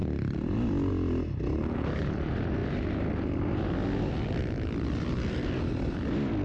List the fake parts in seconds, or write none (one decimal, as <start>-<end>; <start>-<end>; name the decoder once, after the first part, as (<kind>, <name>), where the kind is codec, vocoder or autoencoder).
none